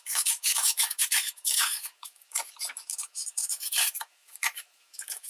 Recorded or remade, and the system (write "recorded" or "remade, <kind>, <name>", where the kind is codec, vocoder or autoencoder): remade, autoencoder, DAC-VAE